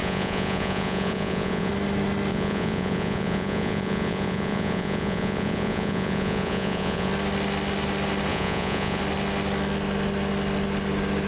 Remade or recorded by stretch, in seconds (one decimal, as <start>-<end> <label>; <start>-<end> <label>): 0.0-1.7 remade; 1.7-2.3 recorded; 2.3-7.1 remade; 7.1-8.3 recorded; 8.3-9.0 remade; 9.0-11.3 recorded